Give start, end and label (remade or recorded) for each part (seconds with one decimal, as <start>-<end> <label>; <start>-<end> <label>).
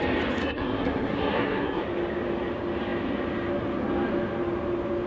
0.0-0.4 recorded; 0.4-1.8 remade; 1.8-5.1 recorded